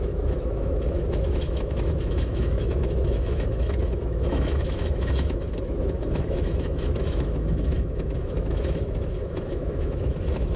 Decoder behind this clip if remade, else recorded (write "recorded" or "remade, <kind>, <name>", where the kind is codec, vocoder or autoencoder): remade, autoencoder, DAC-VAE